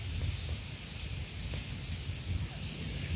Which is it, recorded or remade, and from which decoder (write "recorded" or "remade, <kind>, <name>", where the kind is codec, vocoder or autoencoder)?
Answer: recorded